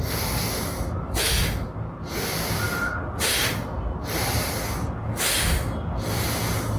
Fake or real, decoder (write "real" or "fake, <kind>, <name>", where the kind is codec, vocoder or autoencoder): real